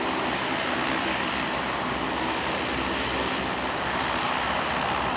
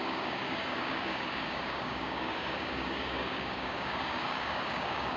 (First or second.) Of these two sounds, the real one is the first